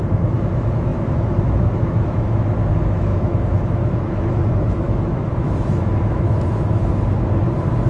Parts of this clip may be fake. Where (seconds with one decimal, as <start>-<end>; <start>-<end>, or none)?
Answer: 0.0-6.8